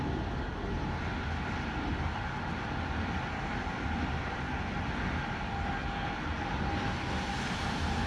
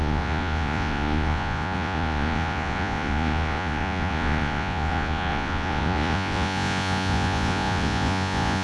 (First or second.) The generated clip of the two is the second